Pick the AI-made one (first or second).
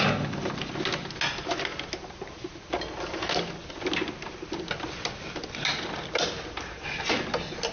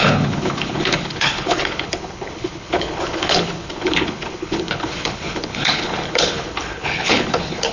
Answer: second